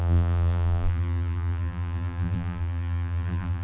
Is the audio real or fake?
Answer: fake